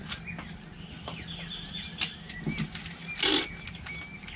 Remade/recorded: recorded